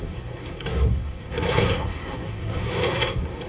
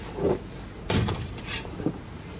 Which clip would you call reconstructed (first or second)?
first